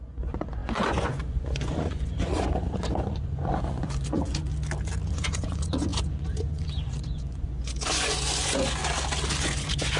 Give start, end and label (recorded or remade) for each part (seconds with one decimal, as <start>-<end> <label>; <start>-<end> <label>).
0.0-4.5 remade; 4.5-5.1 recorded; 5.1-8.8 remade; 8.8-9.4 recorded; 9.4-10.0 remade